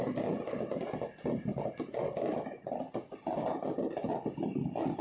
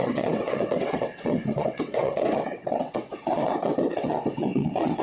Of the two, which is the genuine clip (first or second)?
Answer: first